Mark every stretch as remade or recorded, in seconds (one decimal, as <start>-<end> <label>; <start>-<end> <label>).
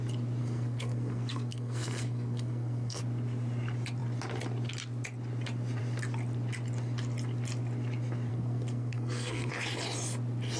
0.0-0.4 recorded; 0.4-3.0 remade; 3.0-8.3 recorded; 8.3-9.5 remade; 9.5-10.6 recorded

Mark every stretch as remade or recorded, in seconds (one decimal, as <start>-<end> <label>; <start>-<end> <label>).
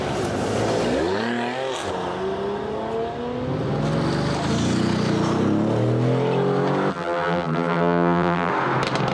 0.0-6.9 recorded; 6.9-8.5 remade; 8.5-9.1 recorded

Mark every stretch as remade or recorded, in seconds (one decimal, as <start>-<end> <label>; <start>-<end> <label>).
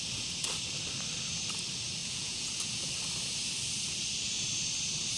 0.0-2.0 recorded; 2.0-2.9 remade; 2.9-5.2 recorded